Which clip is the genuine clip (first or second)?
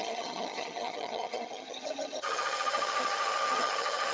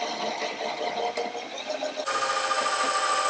second